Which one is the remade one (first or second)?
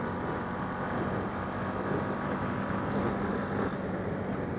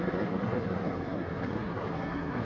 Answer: second